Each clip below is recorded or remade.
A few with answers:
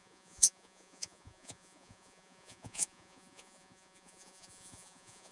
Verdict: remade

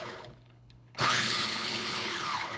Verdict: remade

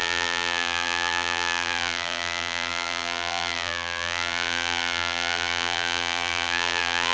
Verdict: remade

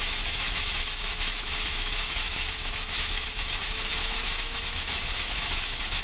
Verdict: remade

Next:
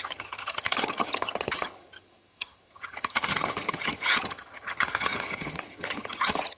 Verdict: remade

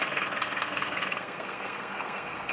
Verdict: remade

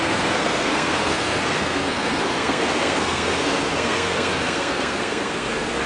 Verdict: remade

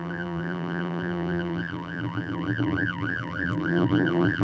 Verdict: remade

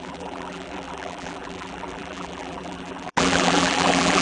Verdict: remade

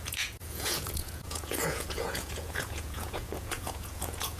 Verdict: remade